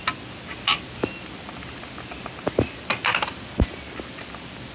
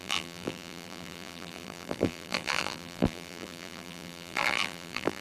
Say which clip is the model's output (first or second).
second